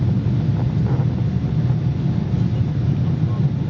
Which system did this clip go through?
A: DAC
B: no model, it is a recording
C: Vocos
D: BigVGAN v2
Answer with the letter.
B